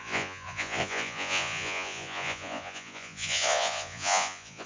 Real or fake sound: fake